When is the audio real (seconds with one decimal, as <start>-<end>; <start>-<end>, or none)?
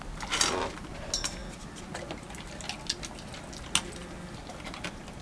0.0-5.2